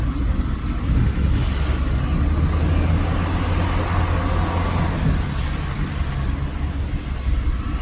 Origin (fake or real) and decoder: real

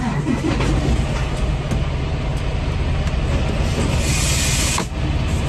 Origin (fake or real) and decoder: real